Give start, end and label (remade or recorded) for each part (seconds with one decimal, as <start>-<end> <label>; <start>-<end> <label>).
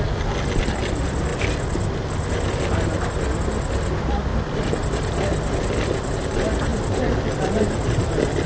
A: 0.0-1.3 recorded; 1.3-2.0 remade; 2.0-4.3 recorded; 4.3-6.1 remade; 6.1-6.7 recorded; 6.7-7.6 remade; 7.6-8.5 recorded